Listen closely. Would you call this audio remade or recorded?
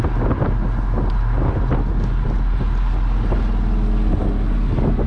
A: recorded